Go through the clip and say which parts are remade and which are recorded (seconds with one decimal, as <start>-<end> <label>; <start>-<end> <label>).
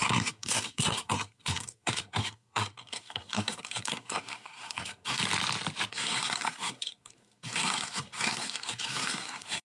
0.0-5.2 remade; 5.2-5.9 recorded; 5.9-9.6 remade